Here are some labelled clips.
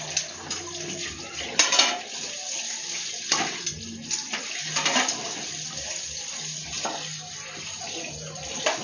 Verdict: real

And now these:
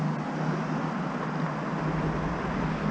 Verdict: real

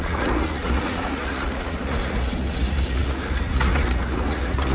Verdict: fake